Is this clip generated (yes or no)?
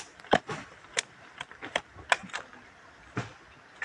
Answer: no